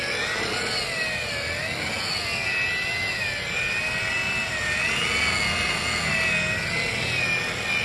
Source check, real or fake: real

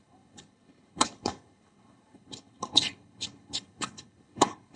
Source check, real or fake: fake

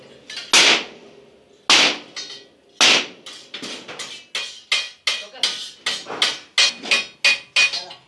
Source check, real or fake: real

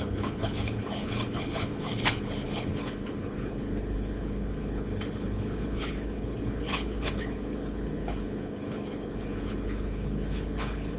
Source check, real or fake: fake